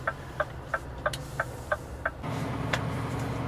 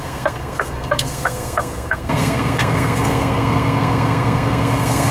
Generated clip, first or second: second